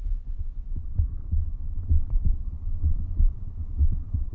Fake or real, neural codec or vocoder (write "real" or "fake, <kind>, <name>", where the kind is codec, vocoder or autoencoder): fake, vocoder, Vocos